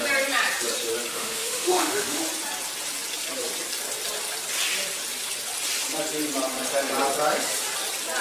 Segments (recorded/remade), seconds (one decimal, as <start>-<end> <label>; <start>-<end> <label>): 0.0-1.1 recorded; 1.1-2.2 remade; 2.2-8.2 recorded